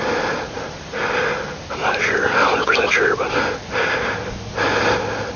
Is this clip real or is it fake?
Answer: real